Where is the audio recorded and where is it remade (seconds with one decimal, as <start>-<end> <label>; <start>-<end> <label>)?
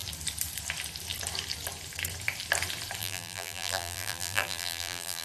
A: 0.0-3.0 recorded; 3.0-5.2 remade